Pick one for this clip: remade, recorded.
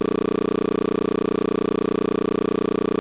recorded